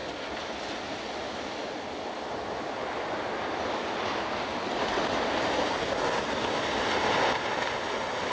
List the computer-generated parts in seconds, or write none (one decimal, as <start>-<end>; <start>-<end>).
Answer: none